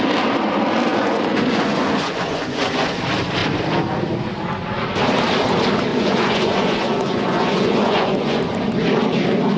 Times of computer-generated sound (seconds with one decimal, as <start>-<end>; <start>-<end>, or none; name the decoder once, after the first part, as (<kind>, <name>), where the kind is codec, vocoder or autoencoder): 0.9-3.0 (vocoder, Vocos); 5.9-8.4